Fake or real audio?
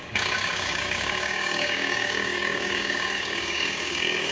fake